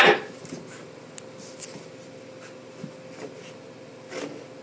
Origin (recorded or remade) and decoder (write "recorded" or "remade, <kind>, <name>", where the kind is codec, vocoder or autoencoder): recorded